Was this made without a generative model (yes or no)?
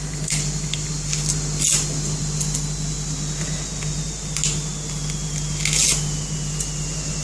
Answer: yes